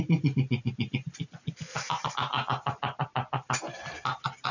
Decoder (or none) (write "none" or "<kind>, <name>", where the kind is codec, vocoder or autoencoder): none